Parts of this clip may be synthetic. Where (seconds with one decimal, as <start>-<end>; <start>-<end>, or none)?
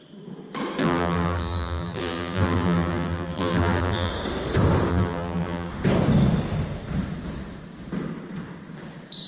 0.8-4.1; 4.9-5.7